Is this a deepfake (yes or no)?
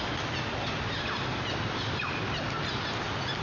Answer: no